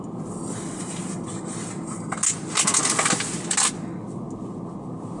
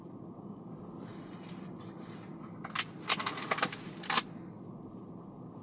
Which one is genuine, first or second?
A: first